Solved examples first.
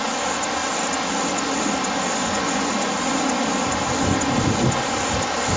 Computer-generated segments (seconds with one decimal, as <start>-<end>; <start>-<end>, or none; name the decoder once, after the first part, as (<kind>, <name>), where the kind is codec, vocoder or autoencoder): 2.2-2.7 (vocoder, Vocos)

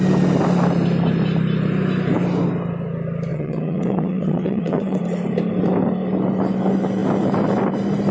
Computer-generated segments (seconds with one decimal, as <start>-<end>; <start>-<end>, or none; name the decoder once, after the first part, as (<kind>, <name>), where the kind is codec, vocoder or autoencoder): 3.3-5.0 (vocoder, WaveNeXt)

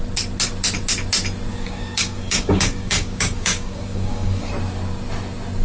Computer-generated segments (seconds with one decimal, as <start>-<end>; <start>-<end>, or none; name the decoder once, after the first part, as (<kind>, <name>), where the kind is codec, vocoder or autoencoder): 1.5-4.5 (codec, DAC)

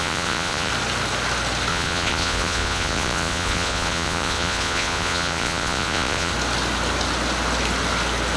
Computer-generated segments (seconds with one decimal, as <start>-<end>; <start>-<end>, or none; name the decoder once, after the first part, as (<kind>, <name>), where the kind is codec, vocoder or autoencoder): 0.0-0.7 (vocoder, Vocos); 1.7-6.3